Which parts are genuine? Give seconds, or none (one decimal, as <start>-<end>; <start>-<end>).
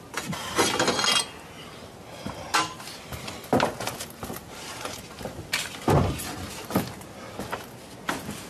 0.0-4.4; 5.4-8.5